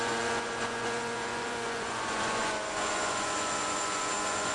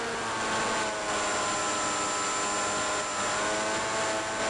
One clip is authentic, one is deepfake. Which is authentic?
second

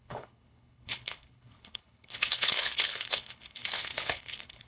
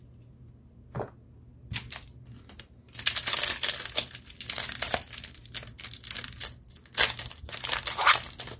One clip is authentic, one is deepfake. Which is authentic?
second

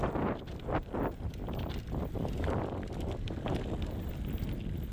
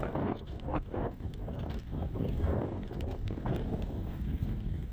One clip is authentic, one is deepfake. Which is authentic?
first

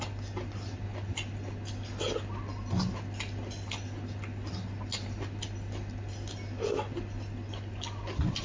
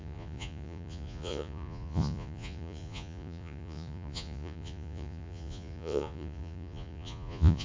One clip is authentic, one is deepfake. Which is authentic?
first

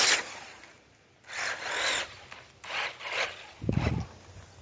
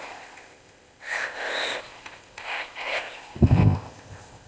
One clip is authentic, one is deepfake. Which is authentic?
first